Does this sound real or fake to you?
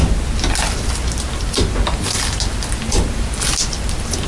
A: real